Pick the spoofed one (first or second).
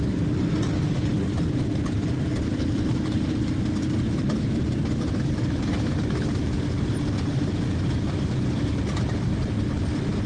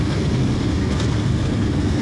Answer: second